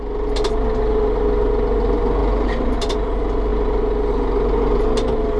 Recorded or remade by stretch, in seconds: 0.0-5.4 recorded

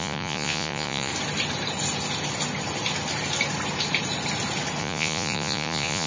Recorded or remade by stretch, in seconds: 0.0-1.1 remade; 1.1-4.8 recorded; 4.8-6.1 remade

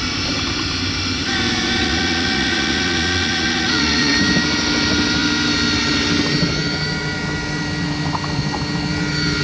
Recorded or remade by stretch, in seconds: 0.0-1.8 recorded; 1.8-4.1 remade; 4.1-9.4 recorded

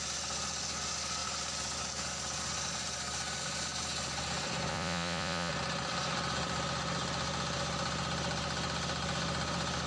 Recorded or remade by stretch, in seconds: 0.0-4.7 recorded; 4.7-5.5 remade; 5.5-9.9 recorded

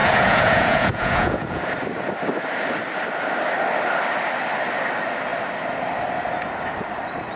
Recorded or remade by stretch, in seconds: 0.0-1.6 remade; 1.6-7.4 recorded

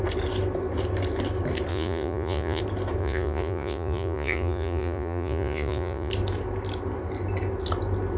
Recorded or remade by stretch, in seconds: 0.0-1.7 recorded; 1.7-2.6 remade; 2.6-3.0 recorded; 3.0-6.1 remade; 6.1-8.2 recorded